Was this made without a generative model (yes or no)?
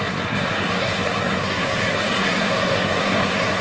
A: no